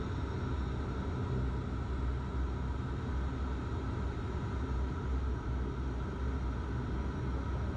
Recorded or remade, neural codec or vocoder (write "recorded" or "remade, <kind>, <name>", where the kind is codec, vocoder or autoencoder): recorded